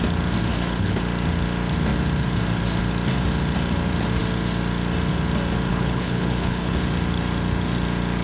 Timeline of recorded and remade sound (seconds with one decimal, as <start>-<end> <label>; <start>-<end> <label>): 0.0-0.5 recorded; 0.5-1.0 remade; 1.0-5.7 recorded; 5.7-6.7 remade; 6.7-8.2 recorded